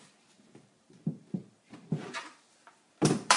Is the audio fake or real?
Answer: fake